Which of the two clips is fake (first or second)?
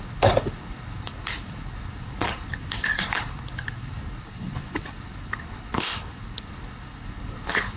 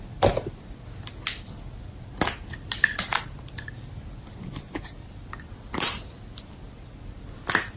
first